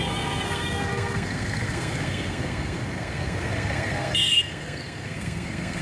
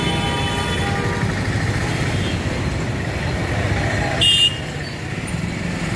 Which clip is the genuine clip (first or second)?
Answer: second